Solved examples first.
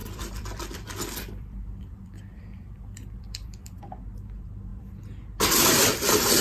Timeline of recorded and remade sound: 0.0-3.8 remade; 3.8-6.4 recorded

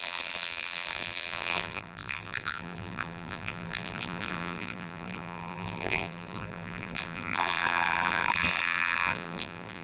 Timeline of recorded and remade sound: 0.0-9.8 remade